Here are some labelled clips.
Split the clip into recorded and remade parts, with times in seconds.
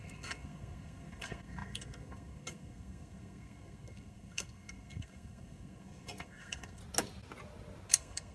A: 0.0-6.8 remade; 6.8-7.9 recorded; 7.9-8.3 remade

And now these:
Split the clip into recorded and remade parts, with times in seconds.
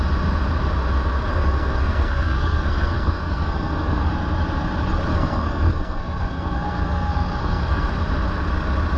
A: 0.0-1.3 recorded; 1.3-4.1 remade; 4.1-5.1 recorded; 5.1-7.9 remade; 7.9-9.0 recorded